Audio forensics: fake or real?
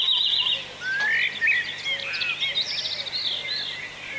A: real